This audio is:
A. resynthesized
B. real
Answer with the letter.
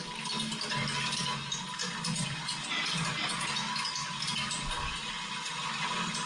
B